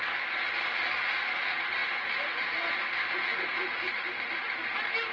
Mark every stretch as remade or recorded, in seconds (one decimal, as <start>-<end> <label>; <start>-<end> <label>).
0.0-5.1 recorded